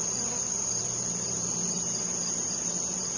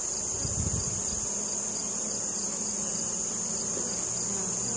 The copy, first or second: first